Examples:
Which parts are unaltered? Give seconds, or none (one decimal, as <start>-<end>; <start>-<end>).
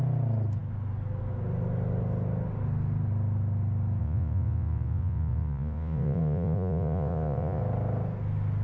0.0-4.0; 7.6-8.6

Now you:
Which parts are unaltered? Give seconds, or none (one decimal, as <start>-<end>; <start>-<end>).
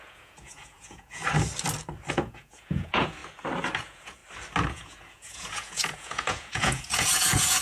1.2-2.1; 3.2-3.8; 4.2-4.7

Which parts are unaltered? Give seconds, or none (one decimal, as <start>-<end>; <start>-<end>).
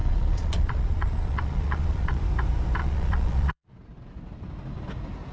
2.2-2.8; 3.7-5.3